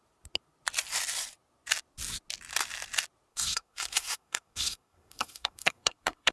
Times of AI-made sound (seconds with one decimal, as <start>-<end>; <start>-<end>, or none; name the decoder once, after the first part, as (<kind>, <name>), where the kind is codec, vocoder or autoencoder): 3.3-6.3 (codec, SNAC)